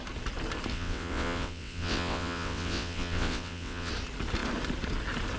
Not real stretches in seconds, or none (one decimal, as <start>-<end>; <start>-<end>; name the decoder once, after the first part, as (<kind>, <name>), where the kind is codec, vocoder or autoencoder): 0.7-3.9 (vocoder, WaveNeXt)